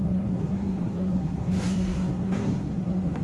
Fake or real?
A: fake